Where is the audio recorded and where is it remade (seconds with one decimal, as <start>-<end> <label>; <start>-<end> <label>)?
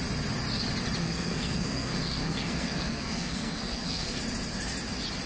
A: 0.0-1.0 recorded; 1.0-4.2 remade; 4.2-5.3 recorded